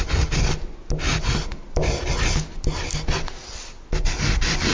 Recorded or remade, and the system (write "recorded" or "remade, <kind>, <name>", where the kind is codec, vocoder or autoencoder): recorded